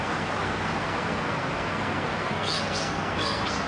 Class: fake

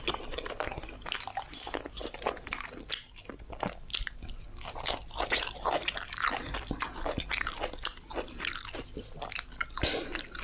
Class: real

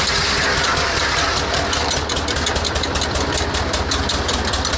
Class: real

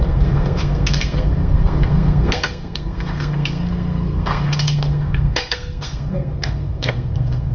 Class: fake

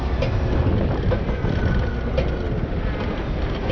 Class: real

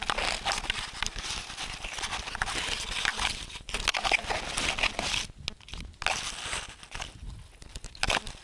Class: real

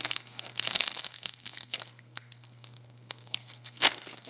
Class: fake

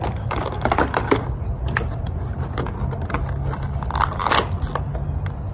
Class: real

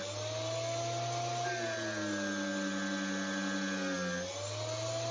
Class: real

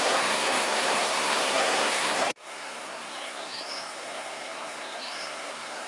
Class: fake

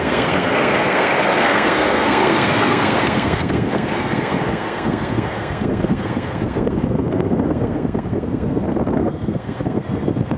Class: fake